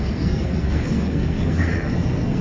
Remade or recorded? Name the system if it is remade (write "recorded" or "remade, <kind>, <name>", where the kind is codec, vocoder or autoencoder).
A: remade, codec, SNAC